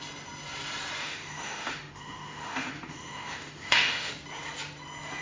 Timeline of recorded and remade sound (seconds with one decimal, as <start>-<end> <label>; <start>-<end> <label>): 0.0-1.0 recorded; 1.0-4.1 remade; 4.1-5.2 recorded